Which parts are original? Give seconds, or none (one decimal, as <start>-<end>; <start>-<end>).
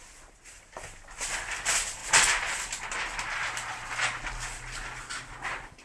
0.0-5.8